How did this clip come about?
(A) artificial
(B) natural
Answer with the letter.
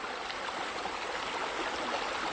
B